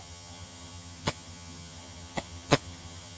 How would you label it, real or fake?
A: fake